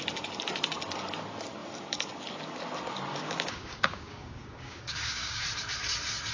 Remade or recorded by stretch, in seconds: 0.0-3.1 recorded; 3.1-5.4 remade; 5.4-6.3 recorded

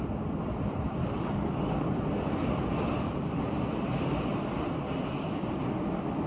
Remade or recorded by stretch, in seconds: 0.0-1.0 recorded; 1.0-1.9 remade; 1.9-6.3 recorded